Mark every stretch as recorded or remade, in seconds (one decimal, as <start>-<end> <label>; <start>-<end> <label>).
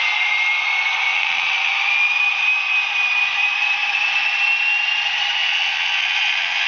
0.0-1.1 recorded; 1.1-1.7 remade; 1.7-5.4 recorded; 5.4-6.7 remade